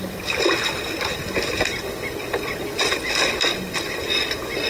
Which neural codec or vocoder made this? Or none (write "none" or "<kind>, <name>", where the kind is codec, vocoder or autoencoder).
none